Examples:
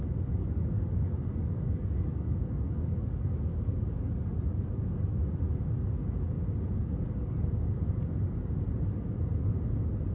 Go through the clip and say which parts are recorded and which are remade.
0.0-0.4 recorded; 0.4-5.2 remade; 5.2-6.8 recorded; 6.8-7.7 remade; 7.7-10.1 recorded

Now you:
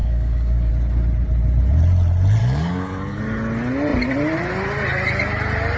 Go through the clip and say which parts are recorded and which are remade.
0.0-0.7 remade; 0.7-2.4 recorded; 2.4-3.2 remade; 3.2-5.8 recorded

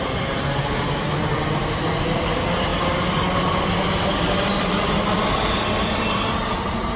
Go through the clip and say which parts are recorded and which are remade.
0.0-7.0 recorded

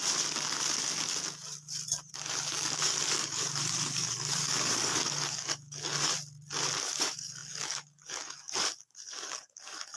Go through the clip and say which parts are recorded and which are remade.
0.0-2.1 recorded; 2.1-6.1 remade; 6.1-6.8 recorded; 6.8-10.0 remade